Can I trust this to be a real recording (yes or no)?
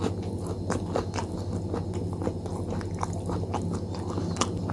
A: yes